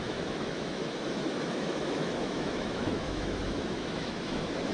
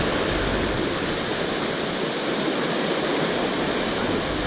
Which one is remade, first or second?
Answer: first